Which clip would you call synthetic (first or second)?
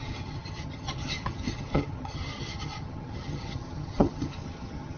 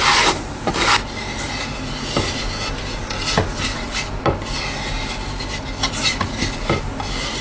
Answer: first